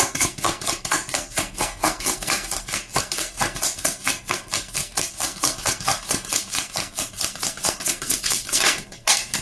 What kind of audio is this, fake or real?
fake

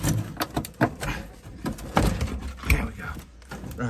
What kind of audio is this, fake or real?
real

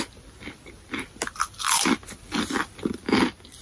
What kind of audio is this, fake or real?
real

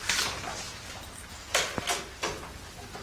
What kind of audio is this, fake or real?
real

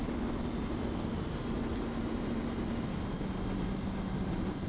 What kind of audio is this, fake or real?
real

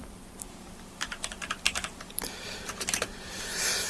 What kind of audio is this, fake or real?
fake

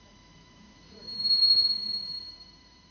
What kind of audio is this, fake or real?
fake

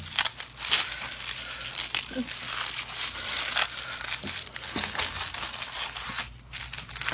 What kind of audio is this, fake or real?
real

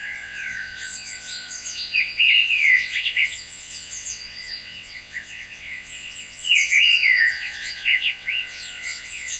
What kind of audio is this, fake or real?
fake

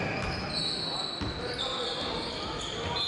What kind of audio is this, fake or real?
real